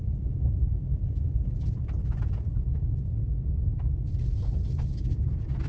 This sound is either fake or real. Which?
fake